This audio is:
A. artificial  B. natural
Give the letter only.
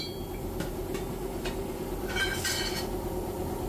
B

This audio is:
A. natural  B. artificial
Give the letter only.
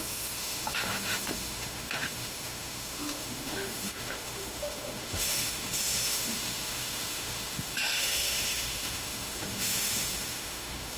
B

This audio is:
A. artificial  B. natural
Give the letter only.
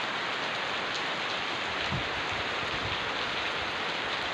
B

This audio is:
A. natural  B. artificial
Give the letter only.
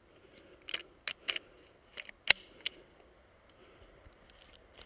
A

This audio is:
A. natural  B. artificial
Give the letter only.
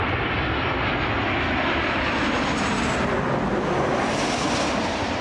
B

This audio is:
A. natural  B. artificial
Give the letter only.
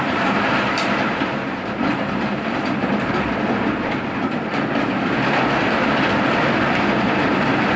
B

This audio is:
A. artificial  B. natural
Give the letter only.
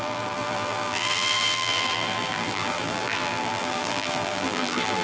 A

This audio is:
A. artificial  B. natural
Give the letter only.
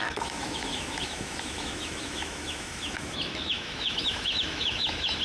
A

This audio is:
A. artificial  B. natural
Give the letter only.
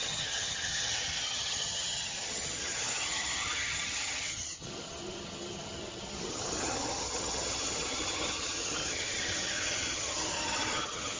A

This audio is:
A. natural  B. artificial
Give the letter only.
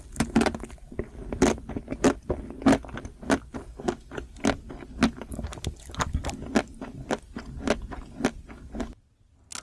A